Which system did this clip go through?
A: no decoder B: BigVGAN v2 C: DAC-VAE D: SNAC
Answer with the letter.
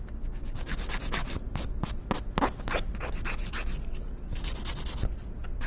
A